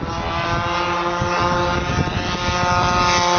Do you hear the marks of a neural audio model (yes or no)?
no